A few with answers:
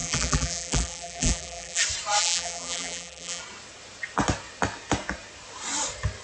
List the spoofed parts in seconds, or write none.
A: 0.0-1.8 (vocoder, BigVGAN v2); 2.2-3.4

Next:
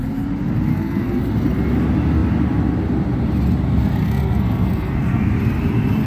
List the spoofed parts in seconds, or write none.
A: 0.7-1.2 (codec, SNAC); 4.0-5.3

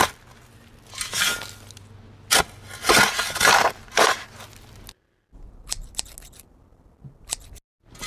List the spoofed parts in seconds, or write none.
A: none

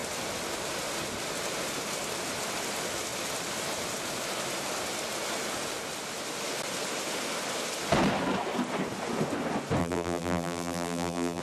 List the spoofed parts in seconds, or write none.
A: 9.8-11.4 (vocoder, BigVGAN v2)

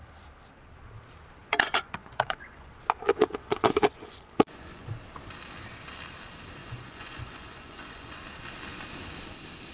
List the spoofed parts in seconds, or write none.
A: 1.4-2.7 (vocoder, Vocos); 3.1-4.9; 6.6-8.2